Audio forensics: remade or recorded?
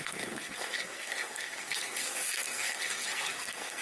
remade